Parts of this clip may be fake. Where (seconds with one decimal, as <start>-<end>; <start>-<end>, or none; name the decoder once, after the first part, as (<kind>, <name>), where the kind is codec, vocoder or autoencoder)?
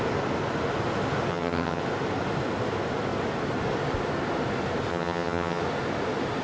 1.3-1.8 (vocoder, HiFi-GAN); 4.9-5.6